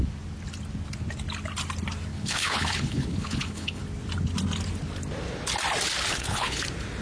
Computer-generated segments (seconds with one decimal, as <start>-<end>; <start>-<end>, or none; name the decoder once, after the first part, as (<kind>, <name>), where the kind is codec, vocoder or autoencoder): 2.1-3.8 (codec, HILCodec); 6.1-6.6